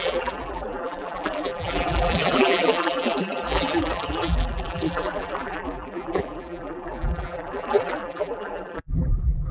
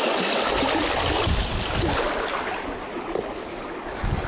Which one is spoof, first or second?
first